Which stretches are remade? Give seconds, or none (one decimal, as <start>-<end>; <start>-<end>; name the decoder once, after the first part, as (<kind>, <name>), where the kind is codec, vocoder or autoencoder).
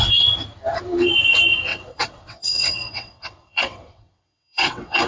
1.7-5.1 (vocoder, WaveNeXt)